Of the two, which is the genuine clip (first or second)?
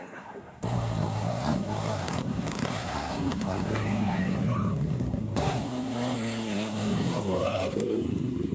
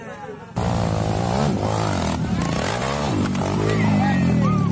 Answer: second